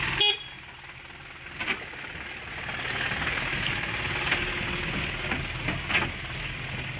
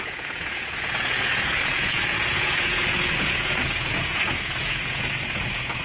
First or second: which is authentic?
first